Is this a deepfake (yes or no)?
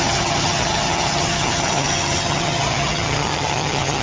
yes